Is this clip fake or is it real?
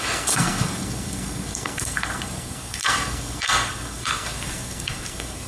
fake